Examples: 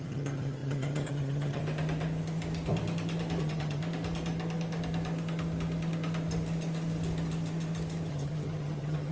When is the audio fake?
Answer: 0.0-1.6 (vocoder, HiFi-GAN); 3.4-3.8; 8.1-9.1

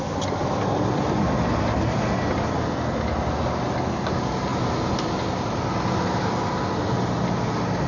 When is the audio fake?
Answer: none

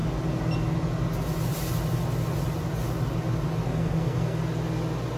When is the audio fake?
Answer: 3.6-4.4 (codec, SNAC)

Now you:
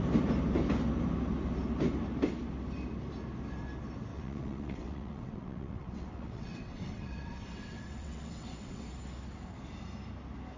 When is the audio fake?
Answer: 4.1-8.9 (vocoder, WaveNeXt)

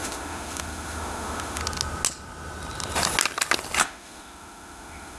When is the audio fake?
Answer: 0.0-1.6 (autoencoder, DAC-VAE); 3.8-5.2